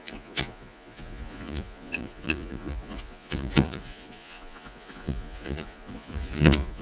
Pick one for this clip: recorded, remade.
remade